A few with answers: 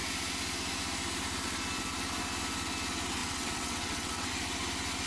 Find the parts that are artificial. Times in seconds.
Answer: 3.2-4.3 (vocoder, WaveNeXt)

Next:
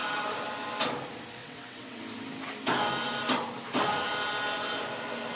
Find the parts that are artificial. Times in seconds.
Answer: 1.4-2.0 (vocoder, WaveNeXt)

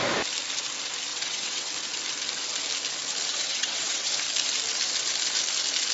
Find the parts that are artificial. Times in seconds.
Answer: 1.1-1.7 (vocoder, WaveNeXt); 3.3-4.1